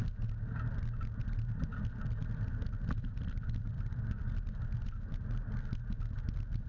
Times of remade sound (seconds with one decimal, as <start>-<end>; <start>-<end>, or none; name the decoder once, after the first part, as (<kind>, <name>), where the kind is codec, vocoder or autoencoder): 3.0-4.3 (vocoder, BigVGAN v2)